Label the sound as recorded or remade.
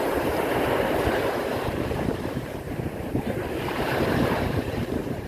remade